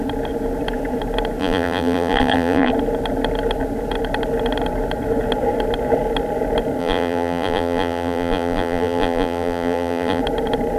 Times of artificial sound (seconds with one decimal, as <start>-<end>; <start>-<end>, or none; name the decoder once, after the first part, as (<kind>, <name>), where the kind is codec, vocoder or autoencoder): 1.4-2.7 (vocoder, BigVGAN v2); 6.8-10.2